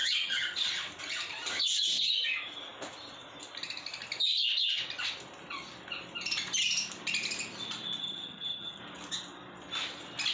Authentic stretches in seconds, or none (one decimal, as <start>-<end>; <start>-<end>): 0.7-8.0; 8.8-10.3